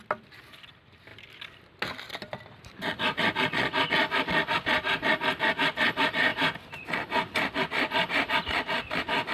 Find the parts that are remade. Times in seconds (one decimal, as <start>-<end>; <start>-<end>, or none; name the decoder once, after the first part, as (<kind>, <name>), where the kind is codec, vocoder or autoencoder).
none